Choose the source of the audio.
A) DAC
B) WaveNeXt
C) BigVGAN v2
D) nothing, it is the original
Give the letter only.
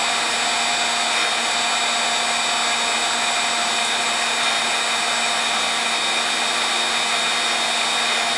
D